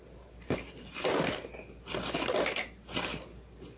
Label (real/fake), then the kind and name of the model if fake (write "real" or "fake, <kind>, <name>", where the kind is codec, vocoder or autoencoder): real